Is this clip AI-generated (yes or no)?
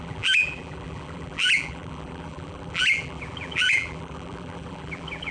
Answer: yes